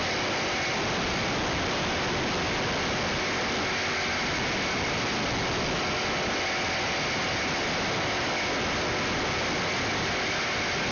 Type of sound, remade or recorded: recorded